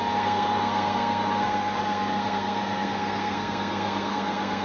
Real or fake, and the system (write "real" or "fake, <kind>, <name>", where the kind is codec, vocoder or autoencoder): fake, codec, SNAC